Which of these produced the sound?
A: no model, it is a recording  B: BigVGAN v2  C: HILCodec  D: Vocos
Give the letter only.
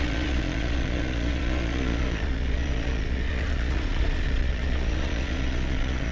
D